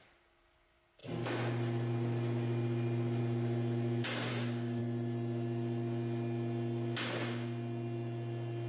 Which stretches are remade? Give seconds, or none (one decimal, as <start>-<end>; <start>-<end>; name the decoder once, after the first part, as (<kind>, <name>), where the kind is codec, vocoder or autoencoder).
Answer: 4.3-4.8 (codec, DAC)